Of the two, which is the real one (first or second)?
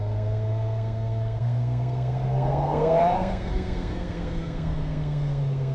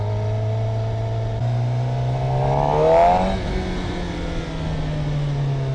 second